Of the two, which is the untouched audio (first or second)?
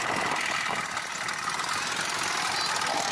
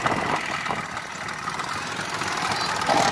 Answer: first